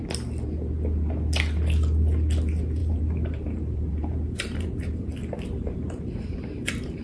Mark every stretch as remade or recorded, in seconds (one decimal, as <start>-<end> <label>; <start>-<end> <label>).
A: 0.0-2.8 recorded; 2.8-7.0 remade